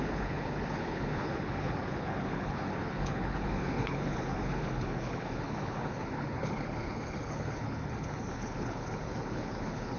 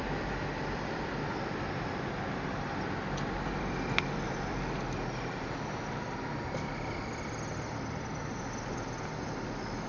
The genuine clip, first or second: second